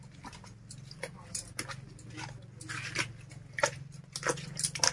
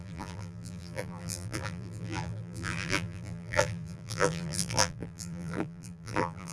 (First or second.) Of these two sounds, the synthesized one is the second